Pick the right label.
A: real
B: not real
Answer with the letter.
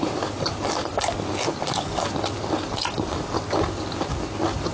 A